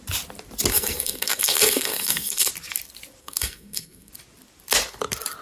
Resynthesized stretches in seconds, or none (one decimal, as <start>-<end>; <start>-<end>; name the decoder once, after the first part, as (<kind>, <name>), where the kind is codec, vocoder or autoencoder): 0.7-2.5 (codec, SNAC); 3.2-4.1